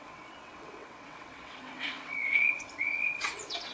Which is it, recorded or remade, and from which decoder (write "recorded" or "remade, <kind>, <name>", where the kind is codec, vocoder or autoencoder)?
remade, vocoder, WaveNeXt